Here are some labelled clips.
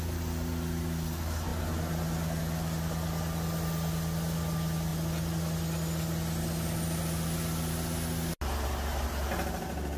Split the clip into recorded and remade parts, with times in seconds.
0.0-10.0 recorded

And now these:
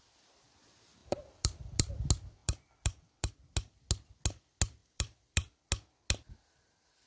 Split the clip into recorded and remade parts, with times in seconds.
0.0-1.0 recorded; 1.0-1.9 remade; 1.9-2.4 recorded; 2.4-3.3 remade; 3.3-4.8 recorded; 4.8-5.7 remade; 5.7-7.1 recorded